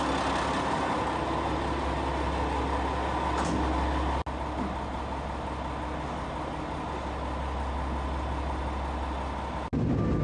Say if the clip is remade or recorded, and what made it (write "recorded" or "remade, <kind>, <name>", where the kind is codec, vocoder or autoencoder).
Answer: recorded